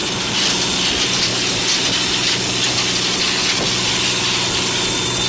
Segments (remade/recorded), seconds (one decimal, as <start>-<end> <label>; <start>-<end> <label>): 0.0-5.3 recorded

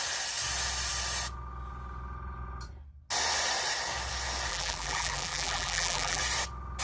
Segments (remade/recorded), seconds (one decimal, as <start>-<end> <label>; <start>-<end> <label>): 0.0-4.5 recorded; 4.5-6.2 remade; 6.2-6.8 recorded

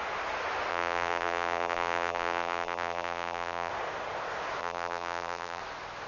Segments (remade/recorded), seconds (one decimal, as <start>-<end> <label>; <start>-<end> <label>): 0.0-0.7 recorded; 0.7-3.7 remade; 3.7-4.6 recorded; 4.6-5.6 remade; 5.6-6.1 recorded

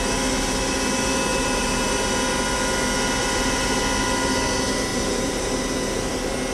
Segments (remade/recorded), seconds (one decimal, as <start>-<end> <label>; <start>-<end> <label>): 0.0-1.3 recorded; 1.3-2.1 remade; 2.1-3.2 recorded; 3.2-3.8 remade; 3.8-4.9 recorded; 4.9-5.5 remade; 5.5-6.5 recorded